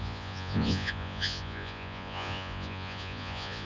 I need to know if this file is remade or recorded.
remade